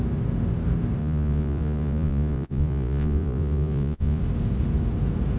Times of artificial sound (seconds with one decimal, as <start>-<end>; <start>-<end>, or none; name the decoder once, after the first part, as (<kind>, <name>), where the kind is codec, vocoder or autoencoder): 1.0-4.2 (vocoder, Vocos)